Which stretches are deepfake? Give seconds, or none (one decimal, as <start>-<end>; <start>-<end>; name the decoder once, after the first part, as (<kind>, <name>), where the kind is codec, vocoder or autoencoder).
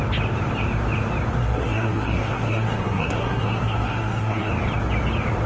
1.4-4.5 (codec, SNAC)